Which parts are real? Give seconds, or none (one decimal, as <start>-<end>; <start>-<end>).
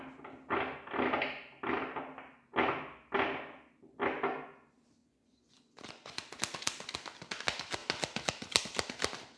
0.0-5.0; 6.4-9.4